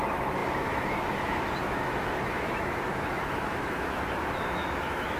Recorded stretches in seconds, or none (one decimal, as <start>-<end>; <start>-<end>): none